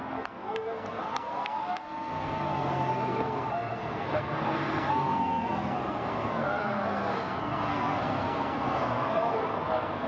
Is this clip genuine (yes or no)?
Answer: no